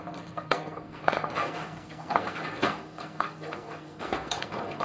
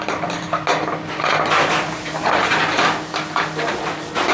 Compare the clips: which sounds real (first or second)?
second